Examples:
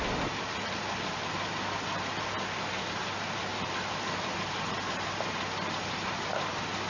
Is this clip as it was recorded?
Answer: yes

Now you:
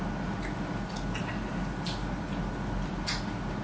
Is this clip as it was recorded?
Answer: yes